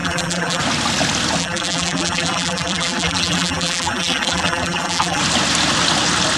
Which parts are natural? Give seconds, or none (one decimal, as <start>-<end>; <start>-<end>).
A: 0.6-1.4; 5.2-6.4